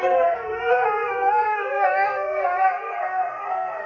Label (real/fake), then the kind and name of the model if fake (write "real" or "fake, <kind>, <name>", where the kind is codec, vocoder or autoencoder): fake, codec, SNAC